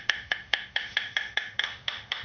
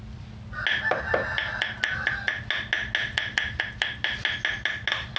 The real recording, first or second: second